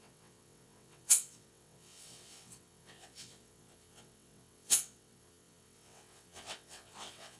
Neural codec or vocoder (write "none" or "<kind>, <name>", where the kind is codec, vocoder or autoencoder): vocoder, WaveNeXt